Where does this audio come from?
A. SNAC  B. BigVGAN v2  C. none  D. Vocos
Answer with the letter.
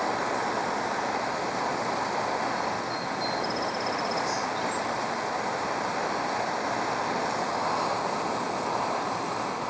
B